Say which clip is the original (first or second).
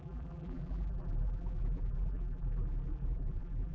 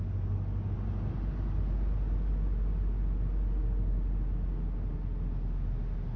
second